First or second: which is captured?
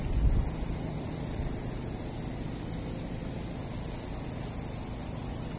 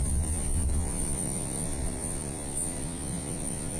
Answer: first